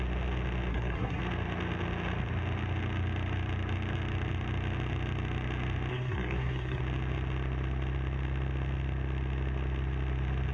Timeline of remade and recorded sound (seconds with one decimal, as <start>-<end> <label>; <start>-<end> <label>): 0.0-0.7 recorded; 0.7-1.2 remade; 1.2-5.9 recorded; 5.9-6.8 remade; 6.8-10.5 recorded